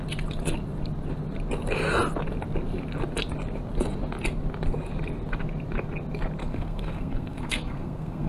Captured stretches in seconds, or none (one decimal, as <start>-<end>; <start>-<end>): 0.0-6.4